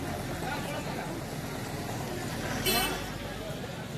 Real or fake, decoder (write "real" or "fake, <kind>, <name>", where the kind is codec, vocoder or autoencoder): real